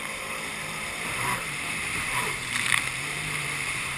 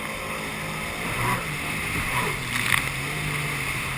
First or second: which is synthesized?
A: first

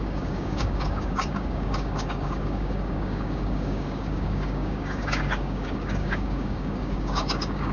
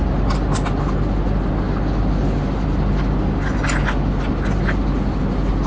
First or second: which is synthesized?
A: first